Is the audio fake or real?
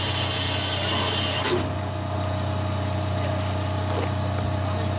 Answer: real